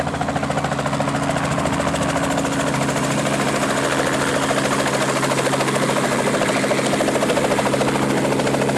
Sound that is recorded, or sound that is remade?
recorded